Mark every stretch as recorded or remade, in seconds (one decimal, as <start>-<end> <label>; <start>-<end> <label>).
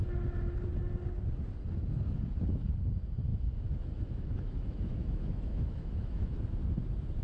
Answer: 0.0-3.3 recorded; 3.3-6.3 remade; 6.3-7.2 recorded